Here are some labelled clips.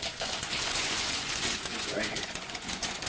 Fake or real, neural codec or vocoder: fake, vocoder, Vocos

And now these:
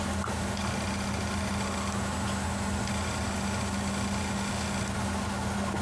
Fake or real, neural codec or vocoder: real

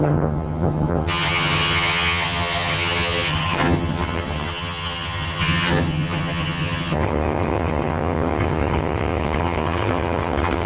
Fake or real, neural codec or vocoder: fake, vocoder, HiFi-GAN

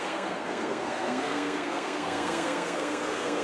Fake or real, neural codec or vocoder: fake, codec, SNAC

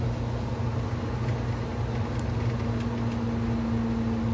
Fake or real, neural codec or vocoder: real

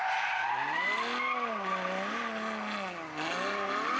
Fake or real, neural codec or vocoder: real